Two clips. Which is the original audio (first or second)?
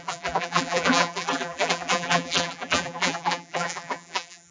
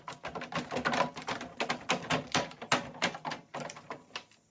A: second